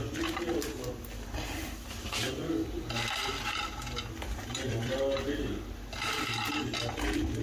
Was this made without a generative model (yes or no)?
no